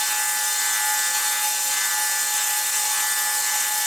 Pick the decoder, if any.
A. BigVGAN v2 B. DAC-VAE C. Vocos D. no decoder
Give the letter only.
D